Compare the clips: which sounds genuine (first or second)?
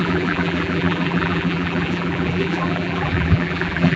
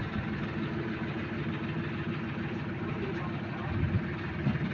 second